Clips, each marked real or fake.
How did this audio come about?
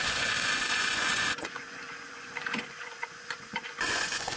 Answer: fake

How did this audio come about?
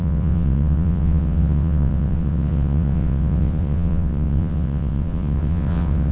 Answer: fake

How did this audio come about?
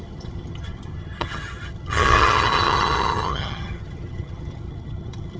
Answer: fake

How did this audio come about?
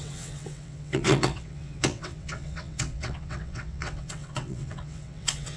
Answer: fake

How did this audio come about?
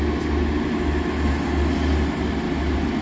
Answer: real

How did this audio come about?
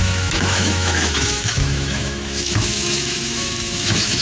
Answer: fake